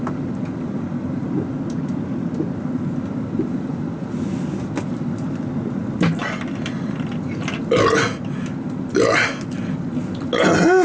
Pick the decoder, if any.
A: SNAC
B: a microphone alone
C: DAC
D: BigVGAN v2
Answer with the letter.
B